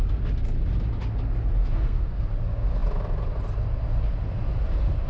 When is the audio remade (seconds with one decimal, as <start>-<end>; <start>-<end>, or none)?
1.6-2.2